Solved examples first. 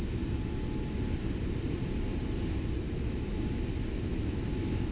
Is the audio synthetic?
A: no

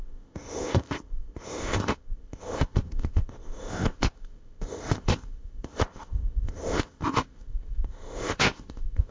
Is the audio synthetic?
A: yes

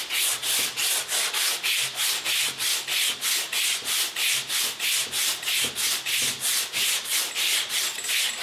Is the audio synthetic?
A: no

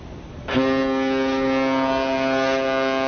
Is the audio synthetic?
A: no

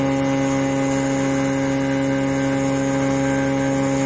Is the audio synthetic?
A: no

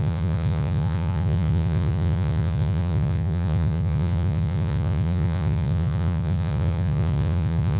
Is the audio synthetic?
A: yes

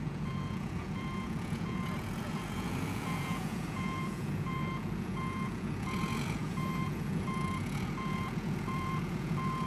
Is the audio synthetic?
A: yes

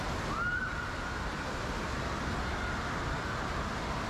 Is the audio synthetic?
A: no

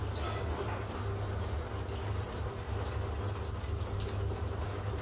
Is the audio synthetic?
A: no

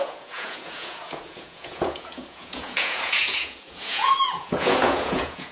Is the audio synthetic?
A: yes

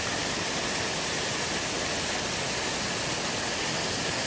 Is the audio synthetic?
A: no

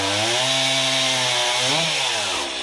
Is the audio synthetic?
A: no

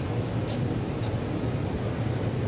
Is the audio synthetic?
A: no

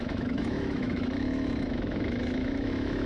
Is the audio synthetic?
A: yes